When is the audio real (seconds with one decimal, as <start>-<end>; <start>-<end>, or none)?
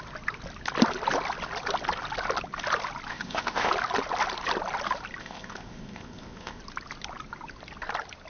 0.0-3.1; 3.7-5.2; 6.6-8.3